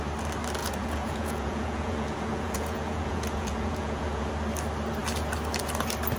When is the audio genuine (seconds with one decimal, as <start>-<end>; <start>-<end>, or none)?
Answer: 0.0-0.6; 4.3-6.2